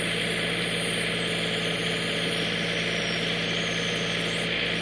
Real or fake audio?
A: real